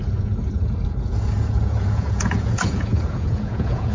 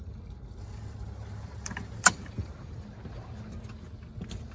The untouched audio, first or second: second